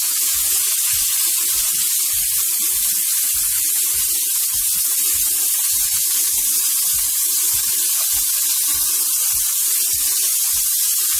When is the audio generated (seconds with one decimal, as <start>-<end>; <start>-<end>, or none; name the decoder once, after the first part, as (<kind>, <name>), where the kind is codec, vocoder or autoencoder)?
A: 0.0-0.6 (vocoder, Vocos)